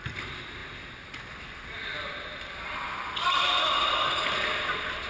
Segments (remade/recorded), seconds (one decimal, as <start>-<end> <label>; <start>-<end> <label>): 0.0-5.1 recorded